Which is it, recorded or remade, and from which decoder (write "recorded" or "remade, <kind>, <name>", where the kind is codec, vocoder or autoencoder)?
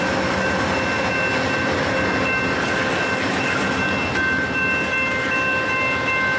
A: recorded